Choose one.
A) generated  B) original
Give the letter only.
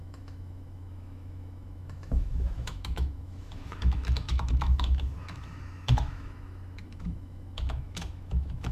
A